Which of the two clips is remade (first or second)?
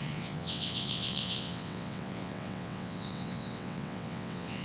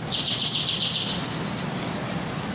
first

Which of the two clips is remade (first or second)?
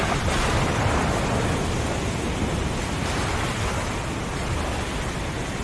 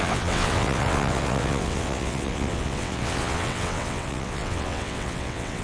second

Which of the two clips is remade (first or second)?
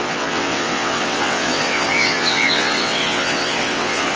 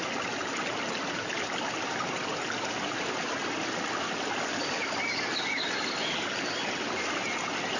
first